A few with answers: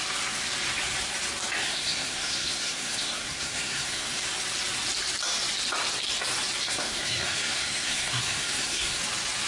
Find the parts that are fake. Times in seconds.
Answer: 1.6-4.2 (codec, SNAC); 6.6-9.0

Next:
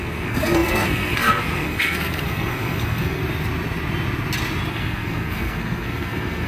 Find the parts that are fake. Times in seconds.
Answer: 0.0-3.2 (codec, SNAC); 4.7-6.5